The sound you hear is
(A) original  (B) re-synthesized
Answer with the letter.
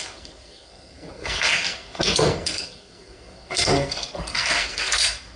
B